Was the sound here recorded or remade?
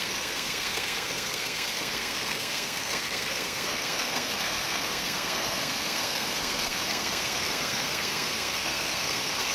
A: remade